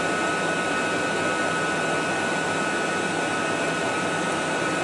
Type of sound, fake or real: real